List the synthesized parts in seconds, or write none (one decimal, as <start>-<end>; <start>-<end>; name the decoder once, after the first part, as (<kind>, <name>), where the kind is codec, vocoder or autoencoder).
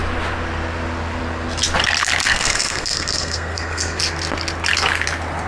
2.2-4.0 (codec, SNAC)